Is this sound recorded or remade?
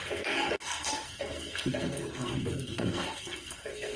remade